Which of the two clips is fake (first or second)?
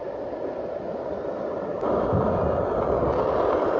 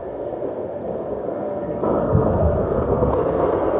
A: second